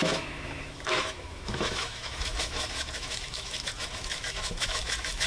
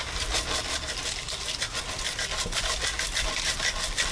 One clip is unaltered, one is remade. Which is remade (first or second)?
first